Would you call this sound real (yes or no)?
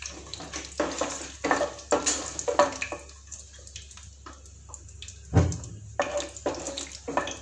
yes